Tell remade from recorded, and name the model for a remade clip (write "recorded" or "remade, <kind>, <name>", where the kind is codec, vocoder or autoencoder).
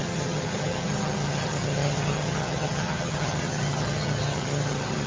remade, vocoder, HiFi-GAN